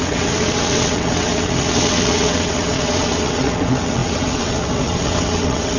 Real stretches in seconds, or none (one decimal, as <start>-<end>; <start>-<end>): none